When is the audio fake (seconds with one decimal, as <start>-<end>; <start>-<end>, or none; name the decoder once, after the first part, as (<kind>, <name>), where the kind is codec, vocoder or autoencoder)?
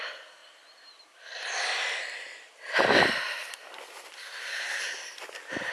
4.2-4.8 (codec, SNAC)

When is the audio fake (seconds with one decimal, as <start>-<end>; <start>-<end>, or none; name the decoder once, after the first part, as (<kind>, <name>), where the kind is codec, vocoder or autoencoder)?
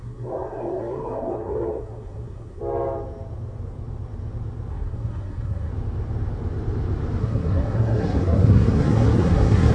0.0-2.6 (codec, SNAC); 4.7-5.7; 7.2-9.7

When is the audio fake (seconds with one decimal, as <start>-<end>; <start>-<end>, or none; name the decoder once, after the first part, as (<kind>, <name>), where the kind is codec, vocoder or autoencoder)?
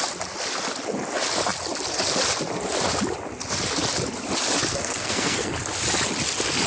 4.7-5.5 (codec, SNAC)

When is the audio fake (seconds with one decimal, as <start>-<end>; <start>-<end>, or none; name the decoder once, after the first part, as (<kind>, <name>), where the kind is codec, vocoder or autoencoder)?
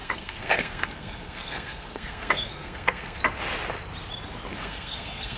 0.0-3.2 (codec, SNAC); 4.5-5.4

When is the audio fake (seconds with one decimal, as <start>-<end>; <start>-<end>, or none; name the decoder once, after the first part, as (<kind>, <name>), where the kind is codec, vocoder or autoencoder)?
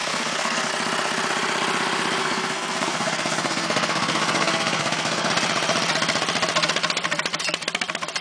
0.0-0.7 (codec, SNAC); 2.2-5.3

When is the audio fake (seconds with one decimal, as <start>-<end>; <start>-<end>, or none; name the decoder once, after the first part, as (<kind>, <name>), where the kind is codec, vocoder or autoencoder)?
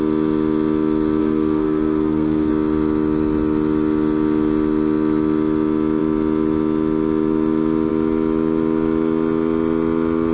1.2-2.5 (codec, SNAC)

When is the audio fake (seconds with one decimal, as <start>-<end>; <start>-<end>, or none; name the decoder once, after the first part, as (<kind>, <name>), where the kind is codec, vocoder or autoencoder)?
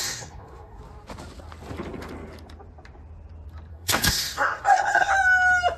0.0-0.8 (codec, SNAC); 3.7-5.1